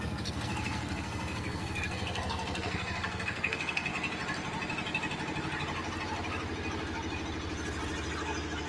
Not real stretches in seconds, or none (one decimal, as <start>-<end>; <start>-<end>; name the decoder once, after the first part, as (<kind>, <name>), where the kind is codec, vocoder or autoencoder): 0.0-3.9 (codec, SNAC)